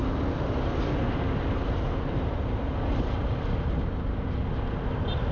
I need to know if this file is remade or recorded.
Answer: recorded